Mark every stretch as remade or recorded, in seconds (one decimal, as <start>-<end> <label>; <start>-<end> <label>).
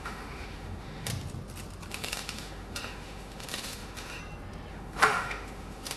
0.0-1.1 remade; 1.1-1.9 recorded; 1.9-4.2 remade; 4.2-4.7 recorded; 4.7-6.0 remade